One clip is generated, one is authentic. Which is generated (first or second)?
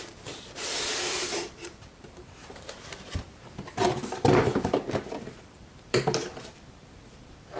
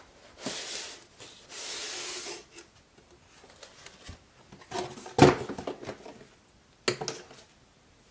first